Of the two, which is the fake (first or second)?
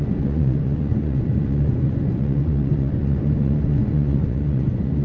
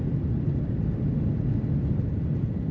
first